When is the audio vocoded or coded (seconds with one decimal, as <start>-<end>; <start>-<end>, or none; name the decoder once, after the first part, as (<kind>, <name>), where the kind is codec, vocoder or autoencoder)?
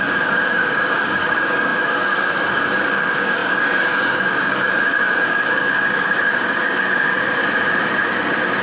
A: 0.0-7.4 (codec, DAC)